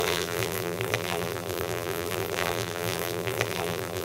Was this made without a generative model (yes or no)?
no